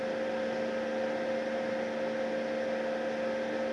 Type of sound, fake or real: real